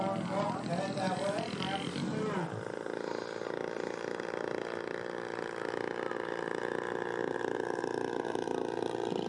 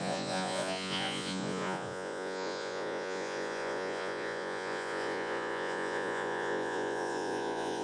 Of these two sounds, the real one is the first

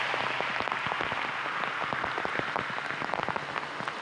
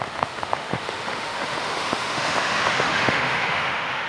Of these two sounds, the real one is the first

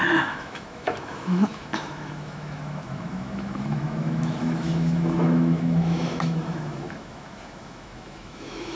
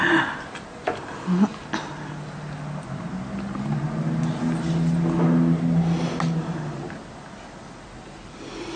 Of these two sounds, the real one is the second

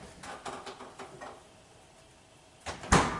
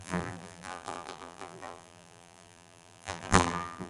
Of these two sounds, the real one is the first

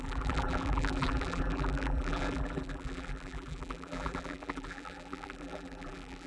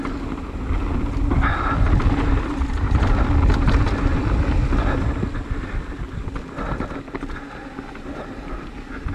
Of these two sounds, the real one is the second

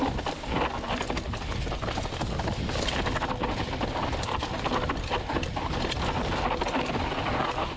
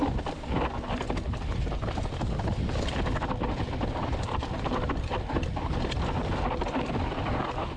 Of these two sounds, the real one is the first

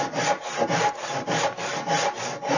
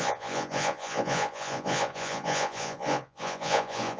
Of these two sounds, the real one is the first